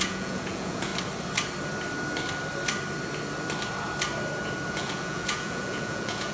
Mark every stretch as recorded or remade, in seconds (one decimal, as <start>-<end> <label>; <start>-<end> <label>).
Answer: 0.0-0.9 remade; 0.9-4.7 recorded; 4.7-6.3 remade